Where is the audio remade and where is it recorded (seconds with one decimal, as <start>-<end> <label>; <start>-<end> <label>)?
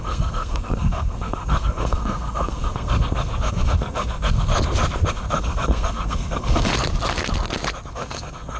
0.0-4.5 remade; 4.5-5.1 recorded; 5.1-6.7 remade; 6.7-7.9 recorded; 7.9-8.6 remade